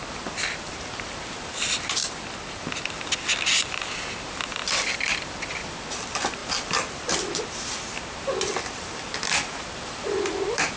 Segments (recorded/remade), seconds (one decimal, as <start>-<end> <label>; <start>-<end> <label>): 0.0-2.0 remade; 2.0-2.9 recorded; 2.9-10.8 remade